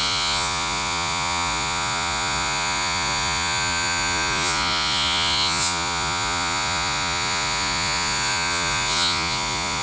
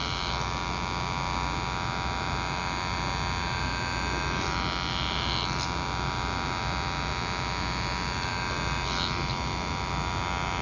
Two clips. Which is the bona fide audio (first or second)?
second